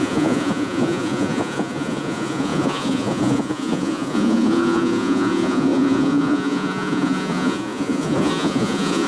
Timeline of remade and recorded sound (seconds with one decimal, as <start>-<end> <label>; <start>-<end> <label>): 0.0-9.1 remade